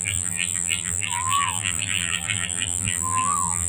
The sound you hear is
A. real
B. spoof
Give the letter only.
B